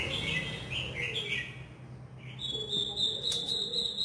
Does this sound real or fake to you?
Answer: real